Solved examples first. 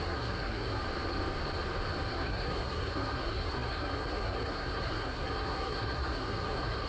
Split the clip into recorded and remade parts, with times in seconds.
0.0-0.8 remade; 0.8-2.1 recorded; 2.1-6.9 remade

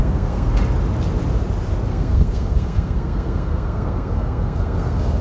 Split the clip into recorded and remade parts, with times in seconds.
0.0-0.6 remade; 0.6-1.9 recorded; 1.9-5.2 remade